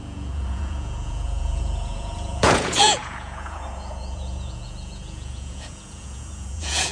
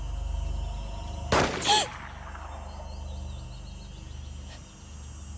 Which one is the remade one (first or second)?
first